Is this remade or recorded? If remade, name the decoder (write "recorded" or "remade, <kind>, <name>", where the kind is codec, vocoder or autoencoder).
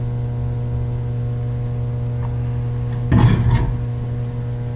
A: recorded